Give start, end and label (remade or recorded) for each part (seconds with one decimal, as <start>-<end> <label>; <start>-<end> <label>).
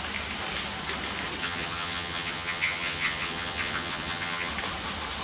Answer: 0.0-1.4 recorded; 1.4-4.5 remade; 4.5-5.2 recorded